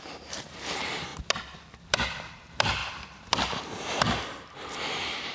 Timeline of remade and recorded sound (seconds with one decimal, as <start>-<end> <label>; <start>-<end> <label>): 0.0-1.1 remade; 1.1-1.9 recorded; 1.9-2.8 remade; 2.8-3.6 recorded; 3.6-5.3 remade